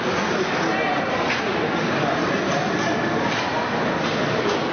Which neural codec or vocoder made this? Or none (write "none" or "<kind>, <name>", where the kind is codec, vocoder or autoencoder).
none